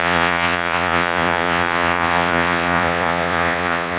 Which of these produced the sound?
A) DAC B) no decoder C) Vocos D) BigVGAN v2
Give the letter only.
C